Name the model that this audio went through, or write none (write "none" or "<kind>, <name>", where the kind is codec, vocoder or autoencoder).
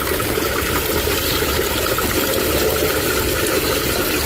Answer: none